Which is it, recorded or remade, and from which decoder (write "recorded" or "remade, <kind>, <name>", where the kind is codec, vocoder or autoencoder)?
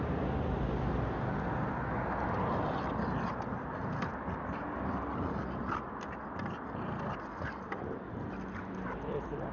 recorded